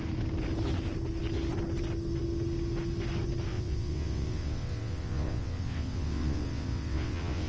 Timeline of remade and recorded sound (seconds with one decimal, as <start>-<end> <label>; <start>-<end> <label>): 0.0-3.5 recorded; 3.5-7.5 remade